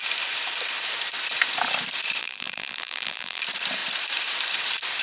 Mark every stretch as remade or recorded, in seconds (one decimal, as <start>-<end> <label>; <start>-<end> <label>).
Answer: 0.0-2.2 recorded; 2.2-3.4 remade; 3.4-5.0 recorded